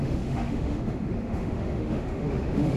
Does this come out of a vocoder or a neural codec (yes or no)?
yes